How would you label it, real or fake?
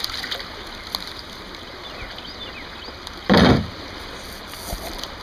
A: real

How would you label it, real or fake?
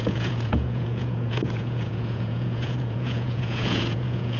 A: fake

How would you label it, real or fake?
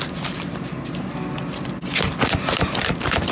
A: real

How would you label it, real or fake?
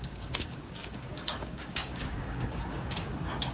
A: fake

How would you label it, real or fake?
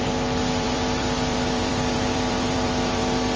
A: fake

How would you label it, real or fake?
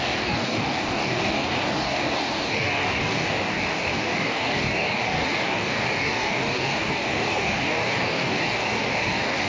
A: fake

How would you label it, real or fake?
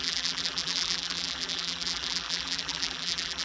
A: fake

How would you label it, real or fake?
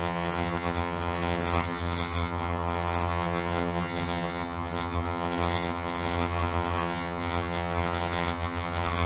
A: fake